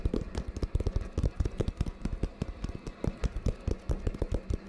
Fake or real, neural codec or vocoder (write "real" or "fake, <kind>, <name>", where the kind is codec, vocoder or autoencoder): real